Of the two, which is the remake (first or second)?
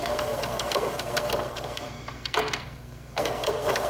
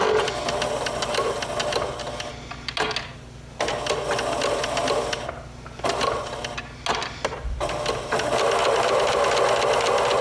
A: first